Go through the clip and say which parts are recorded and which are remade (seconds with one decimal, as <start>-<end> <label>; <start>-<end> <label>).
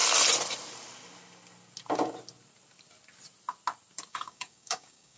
0.0-4.1 recorded; 4.1-5.2 remade